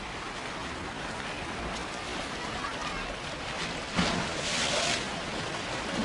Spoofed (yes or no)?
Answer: no